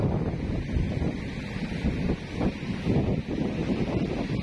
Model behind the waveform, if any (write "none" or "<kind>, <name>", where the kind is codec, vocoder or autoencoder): none